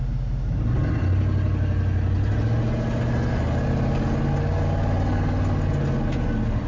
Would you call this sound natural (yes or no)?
yes